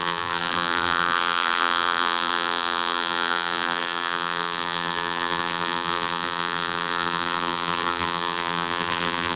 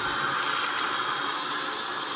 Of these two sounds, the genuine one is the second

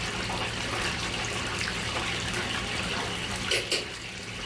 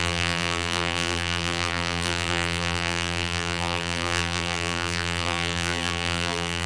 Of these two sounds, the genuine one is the first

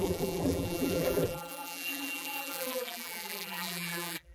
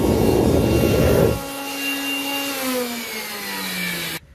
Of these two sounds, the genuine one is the second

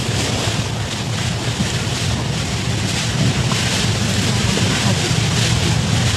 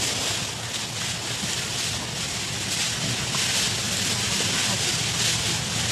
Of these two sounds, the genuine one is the second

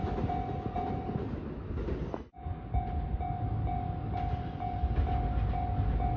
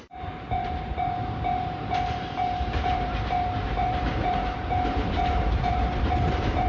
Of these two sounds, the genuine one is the first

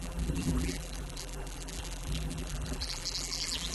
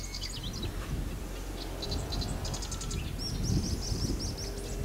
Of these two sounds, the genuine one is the second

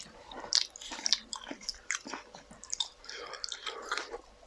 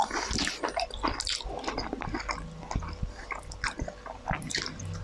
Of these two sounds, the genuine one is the second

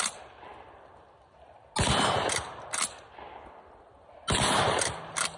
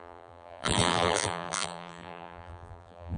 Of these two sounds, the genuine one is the first